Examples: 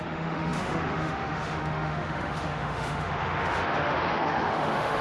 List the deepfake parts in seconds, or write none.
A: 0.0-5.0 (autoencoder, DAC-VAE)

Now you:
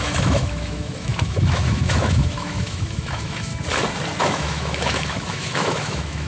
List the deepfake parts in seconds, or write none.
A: 0.0-3.5 (autoencoder, DAC-VAE); 4.2-6.3

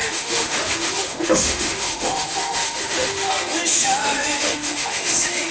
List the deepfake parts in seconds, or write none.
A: 0.0-3.3 (autoencoder, DAC-VAE); 3.7-5.5

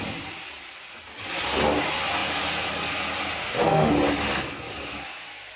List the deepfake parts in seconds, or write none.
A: 3.4-3.9 (autoencoder, DAC-VAE)

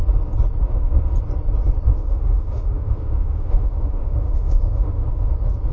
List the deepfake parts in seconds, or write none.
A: 0.6-1.1 (autoencoder, DAC-VAE); 1.9-5.3

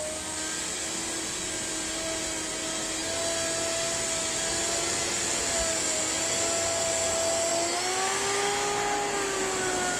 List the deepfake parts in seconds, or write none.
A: none

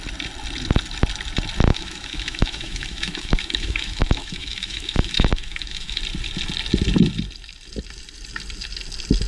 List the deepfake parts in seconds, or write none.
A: 1.7-6.0 (autoencoder, DAC-VAE)